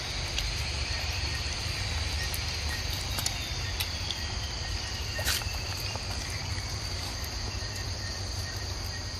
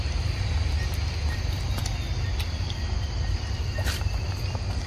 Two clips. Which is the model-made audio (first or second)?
first